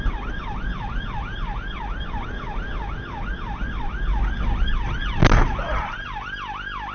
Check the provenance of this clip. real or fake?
real